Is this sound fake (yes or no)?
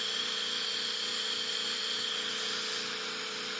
no